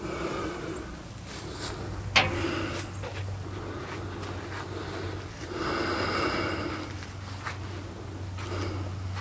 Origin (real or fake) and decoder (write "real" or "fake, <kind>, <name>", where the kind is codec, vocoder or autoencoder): real